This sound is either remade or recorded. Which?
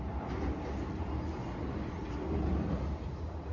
recorded